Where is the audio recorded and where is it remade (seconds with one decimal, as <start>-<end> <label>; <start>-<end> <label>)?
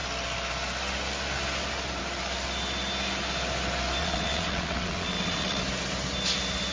0.0-4.0 recorded; 4.0-5.6 remade; 5.6-6.7 recorded